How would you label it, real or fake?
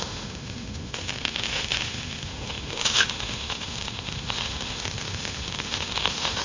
fake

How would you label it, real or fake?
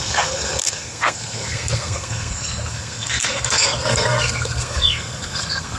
fake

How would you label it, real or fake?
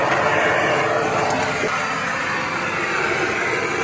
real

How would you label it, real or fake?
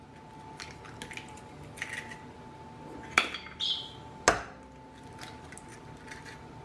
real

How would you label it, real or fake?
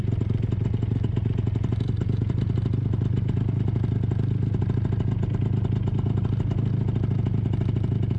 real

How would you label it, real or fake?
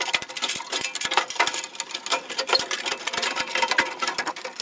real